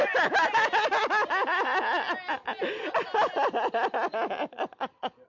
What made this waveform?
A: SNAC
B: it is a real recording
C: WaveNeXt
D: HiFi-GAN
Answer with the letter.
B